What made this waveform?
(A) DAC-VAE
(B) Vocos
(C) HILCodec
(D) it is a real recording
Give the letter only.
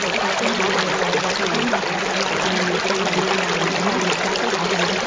D